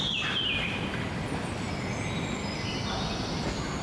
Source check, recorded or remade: recorded